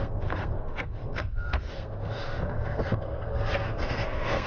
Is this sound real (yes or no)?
no